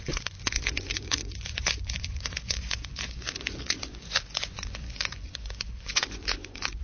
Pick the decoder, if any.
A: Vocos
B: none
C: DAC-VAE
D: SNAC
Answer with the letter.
A